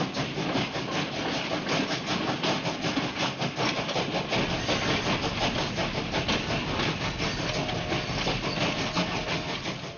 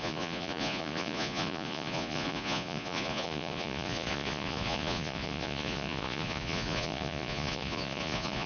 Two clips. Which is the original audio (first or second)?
first